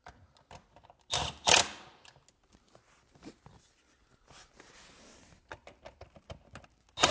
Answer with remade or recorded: recorded